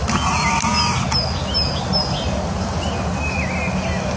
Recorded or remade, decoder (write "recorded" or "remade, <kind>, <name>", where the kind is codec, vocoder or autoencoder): recorded